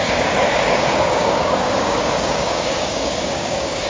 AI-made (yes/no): yes